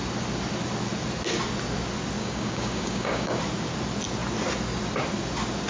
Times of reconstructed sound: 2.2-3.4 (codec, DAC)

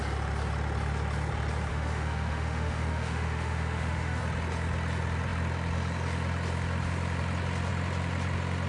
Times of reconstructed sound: 1.7-4.2 (autoencoder, DAC-VAE)